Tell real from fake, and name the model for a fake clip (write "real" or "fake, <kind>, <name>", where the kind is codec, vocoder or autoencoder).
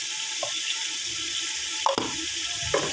real